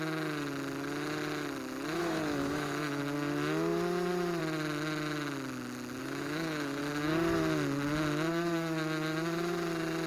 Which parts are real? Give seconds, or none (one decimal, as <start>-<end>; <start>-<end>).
0.0-2.0; 3.0-6.0; 6.8-10.1